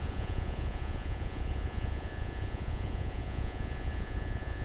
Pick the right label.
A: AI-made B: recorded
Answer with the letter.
A